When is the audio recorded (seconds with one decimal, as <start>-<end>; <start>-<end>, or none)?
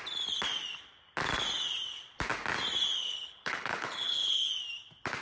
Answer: 0.0-3.0; 4.5-5.2